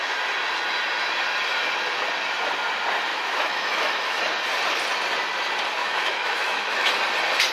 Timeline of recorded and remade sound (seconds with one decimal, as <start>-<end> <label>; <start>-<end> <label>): 0.0-3.1 recorded; 3.1-4.2 remade; 4.2-5.8 recorded; 5.8-6.9 remade; 6.9-7.5 recorded